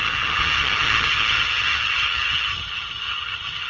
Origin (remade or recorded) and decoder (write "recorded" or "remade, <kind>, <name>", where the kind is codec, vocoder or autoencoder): remade, vocoder, HiFi-GAN